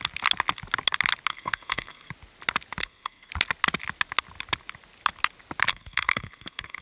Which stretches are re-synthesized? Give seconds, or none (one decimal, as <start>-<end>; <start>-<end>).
1.3-2.1; 2.8-3.3; 5.7-6.8